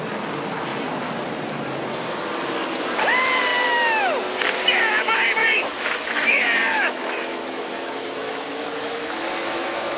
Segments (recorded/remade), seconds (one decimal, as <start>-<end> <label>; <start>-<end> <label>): 0.0-5.4 recorded; 5.4-10.0 remade

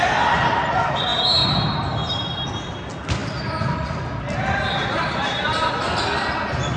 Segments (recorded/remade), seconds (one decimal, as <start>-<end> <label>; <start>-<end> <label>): 0.0-6.8 recorded

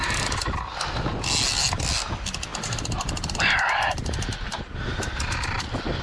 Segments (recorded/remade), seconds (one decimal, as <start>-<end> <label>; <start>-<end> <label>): 0.0-6.0 recorded

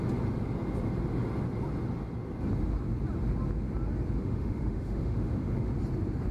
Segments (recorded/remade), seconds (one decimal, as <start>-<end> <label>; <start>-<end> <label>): 0.0-4.2 recorded; 4.2-5.7 remade; 5.7-6.3 recorded

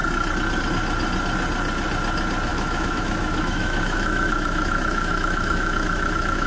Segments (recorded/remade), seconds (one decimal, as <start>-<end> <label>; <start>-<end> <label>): 0.0-2.5 recorded; 2.5-6.5 remade